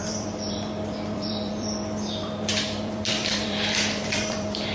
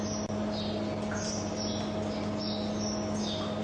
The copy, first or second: first